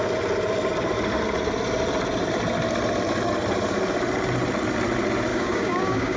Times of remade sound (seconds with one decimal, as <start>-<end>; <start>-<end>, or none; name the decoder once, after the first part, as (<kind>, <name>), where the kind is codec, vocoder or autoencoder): 5.3-6.2 (codec, DAC)